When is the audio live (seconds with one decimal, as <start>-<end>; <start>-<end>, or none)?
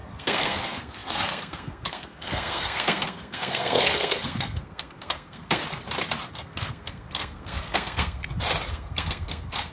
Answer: 5.6-6.3; 8.2-8.7